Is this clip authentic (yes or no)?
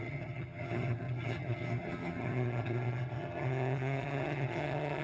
no